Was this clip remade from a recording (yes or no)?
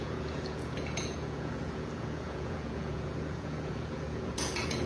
yes